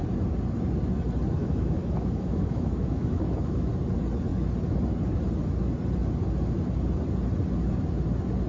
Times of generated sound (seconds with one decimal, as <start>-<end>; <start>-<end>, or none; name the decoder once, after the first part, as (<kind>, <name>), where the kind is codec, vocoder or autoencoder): 1.4-3.7 (autoencoder, DAC-VAE)